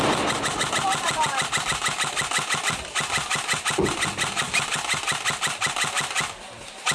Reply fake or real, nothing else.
real